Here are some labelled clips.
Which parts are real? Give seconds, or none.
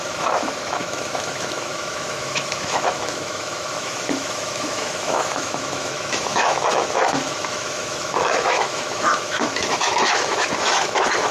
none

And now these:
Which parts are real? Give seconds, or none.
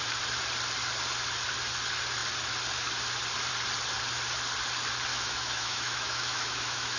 0.0-5.1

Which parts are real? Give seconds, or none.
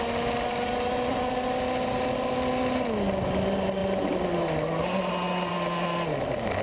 0.0-6.6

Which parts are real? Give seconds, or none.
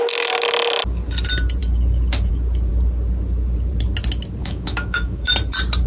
0.0-4.4; 5.3-5.9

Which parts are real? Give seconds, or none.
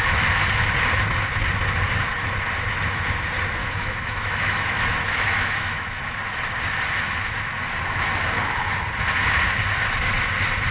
0.0-3.6; 6.2-10.7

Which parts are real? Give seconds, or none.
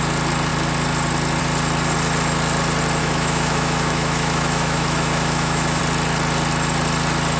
0.0-3.0; 5.8-7.4